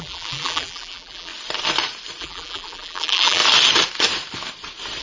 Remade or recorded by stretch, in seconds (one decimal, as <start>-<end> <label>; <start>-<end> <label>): 0.0-1.3 remade; 1.3-2.2 recorded; 2.2-3.4 remade; 3.4-5.0 recorded